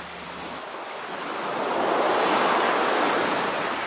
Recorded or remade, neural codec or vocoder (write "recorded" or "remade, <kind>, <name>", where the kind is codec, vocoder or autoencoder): recorded